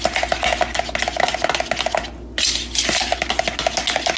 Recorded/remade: recorded